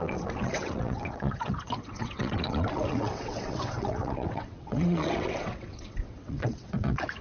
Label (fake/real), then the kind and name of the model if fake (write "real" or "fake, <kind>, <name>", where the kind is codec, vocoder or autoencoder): fake, vocoder, WaveNeXt